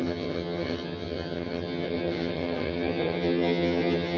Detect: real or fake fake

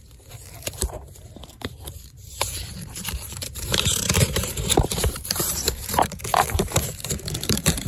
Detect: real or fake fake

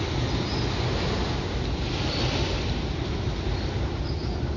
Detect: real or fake real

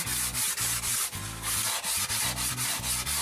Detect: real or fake real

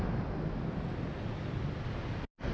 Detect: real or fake real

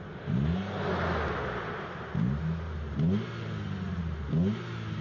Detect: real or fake real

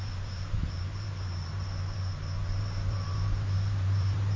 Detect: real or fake fake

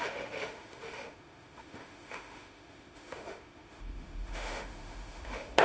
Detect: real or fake fake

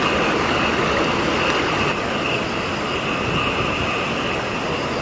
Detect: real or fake real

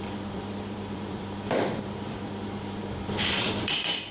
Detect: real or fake fake